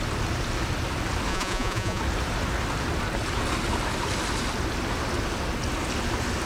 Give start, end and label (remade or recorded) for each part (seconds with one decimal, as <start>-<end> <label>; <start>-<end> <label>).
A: 0.0-1.3 recorded; 1.3-2.0 remade; 2.0-6.5 recorded